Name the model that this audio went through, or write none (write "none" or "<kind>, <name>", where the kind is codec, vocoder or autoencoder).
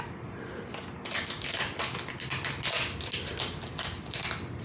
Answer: none